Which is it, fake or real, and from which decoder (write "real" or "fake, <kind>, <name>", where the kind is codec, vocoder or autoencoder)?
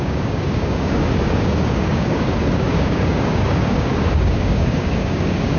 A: fake, codec, DAC